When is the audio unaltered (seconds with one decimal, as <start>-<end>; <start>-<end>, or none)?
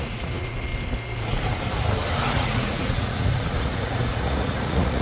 0.7-2.3